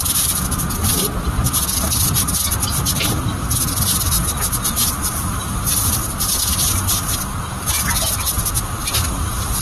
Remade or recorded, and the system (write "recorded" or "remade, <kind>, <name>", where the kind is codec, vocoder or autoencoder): recorded